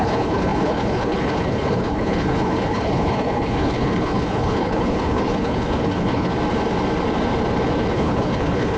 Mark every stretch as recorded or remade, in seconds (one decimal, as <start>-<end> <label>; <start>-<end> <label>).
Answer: 0.0-6.3 remade; 6.3-7.9 recorded; 7.9-8.8 remade